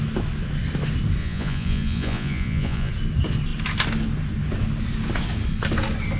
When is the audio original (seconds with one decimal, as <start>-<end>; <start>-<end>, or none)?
0.0-1.2; 2.9-6.2